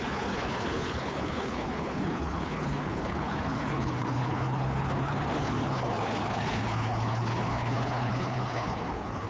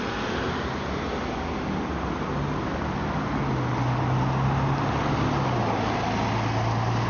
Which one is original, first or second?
second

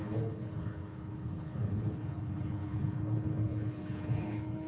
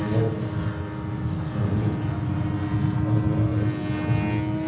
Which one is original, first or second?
second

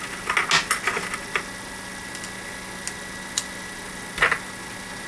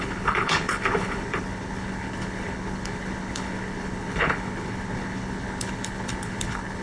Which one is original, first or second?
first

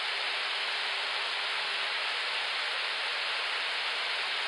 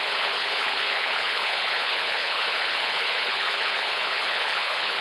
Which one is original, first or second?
first